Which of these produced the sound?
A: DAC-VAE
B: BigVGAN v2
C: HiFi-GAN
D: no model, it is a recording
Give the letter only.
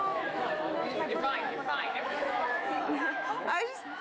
A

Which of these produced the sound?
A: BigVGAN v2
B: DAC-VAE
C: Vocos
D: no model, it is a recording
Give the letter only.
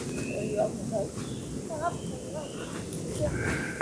D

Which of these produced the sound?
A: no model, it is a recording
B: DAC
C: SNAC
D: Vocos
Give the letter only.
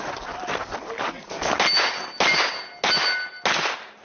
A